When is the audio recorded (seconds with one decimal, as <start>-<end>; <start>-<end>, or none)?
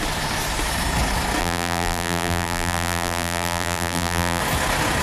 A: 0.0-1.4; 4.4-5.0